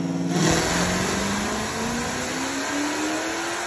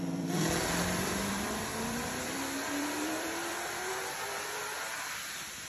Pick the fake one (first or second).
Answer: second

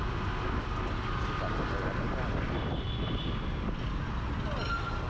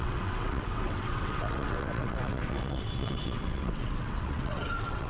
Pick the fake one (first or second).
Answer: second